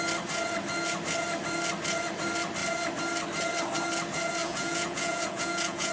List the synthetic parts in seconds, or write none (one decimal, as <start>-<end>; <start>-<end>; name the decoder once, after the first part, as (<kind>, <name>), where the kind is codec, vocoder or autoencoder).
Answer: 4.4-5.9 (vocoder, Vocos)